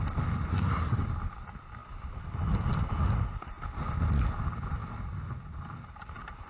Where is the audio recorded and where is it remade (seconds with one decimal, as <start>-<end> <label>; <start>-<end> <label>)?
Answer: 0.0-0.5 recorded; 0.5-1.0 remade; 1.0-6.5 recorded